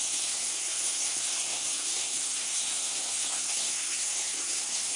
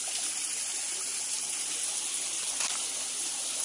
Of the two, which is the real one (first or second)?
second